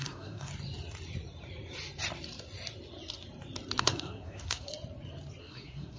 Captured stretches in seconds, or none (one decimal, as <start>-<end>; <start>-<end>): 0.5-3.8; 4.7-5.4